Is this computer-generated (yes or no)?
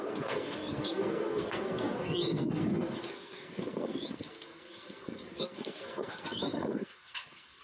yes